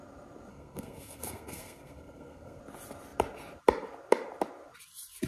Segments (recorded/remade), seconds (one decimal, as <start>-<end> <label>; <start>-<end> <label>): 0.0-0.5 recorded; 0.5-2.6 remade; 2.6-5.3 recorded